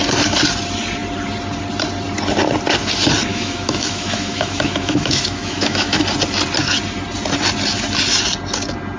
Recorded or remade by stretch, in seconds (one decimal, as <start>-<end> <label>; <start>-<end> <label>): 0.0-3.3 recorded; 3.3-6.0 remade; 6.0-9.0 recorded